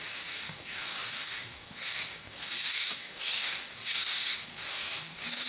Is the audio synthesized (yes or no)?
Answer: yes